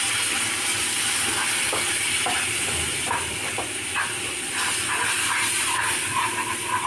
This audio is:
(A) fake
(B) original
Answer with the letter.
B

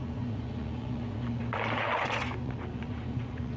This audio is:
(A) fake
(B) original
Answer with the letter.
A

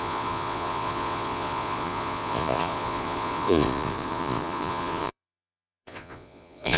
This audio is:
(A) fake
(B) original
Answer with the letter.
A